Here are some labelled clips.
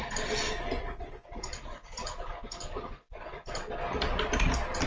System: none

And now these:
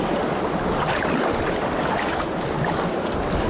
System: none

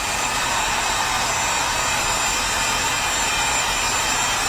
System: none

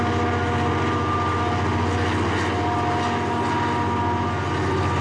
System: none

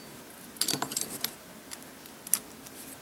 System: none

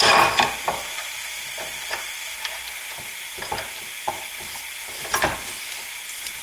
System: none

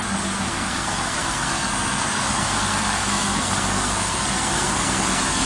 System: codec, SNAC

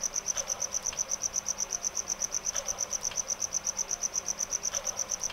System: vocoder, BigVGAN v2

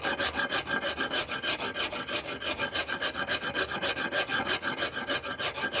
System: none